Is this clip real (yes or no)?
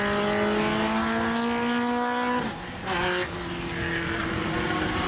yes